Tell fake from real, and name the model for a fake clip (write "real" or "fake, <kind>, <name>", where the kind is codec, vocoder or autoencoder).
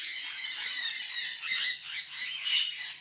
fake, vocoder, BigVGAN v2